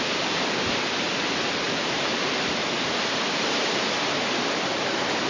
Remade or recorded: recorded